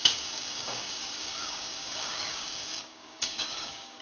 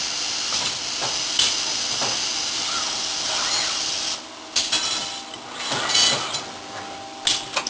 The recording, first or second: second